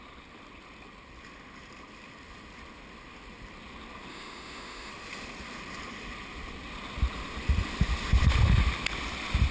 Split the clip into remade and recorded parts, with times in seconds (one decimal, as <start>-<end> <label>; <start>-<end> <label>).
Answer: 0.0-4.1 recorded; 4.1-4.9 remade; 4.9-9.5 recorded